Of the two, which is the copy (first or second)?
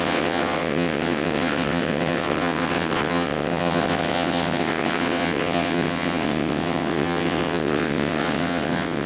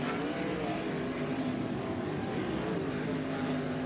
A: first